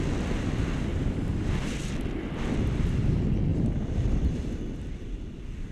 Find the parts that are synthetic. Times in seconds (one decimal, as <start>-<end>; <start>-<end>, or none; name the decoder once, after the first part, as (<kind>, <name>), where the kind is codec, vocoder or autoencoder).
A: 0.9-1.5 (vocoder, BigVGAN v2); 3.5-4.4